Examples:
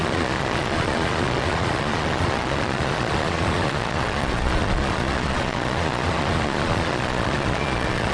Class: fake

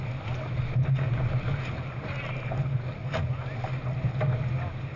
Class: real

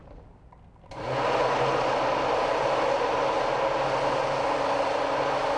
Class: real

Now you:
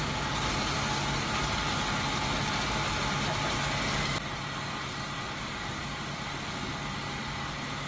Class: real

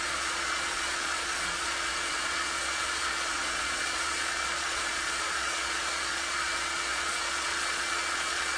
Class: fake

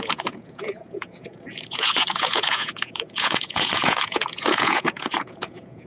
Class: fake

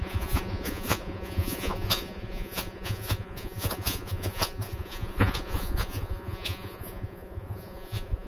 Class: fake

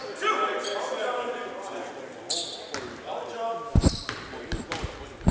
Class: real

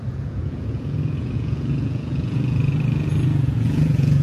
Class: fake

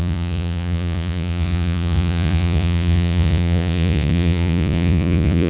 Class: fake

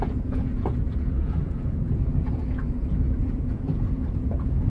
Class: fake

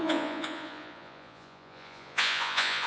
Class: fake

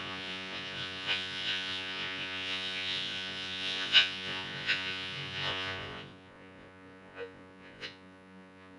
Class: fake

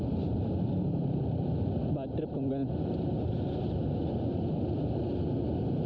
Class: real